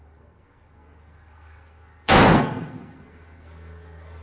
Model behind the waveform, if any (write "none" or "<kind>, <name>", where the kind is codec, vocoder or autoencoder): codec, SNAC